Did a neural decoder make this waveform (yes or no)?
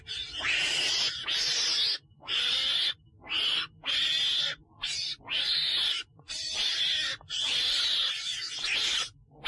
no